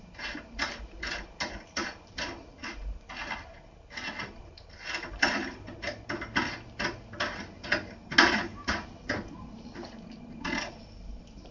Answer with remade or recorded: recorded